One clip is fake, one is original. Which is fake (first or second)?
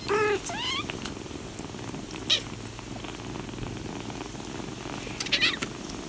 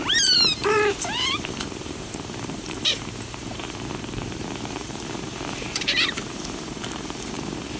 second